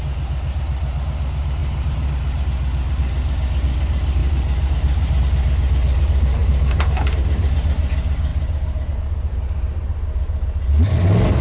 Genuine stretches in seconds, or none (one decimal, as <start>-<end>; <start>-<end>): 0.0-1.6; 2.1-4.2; 5.2-6.4; 7.5-8.3; 8.9-11.4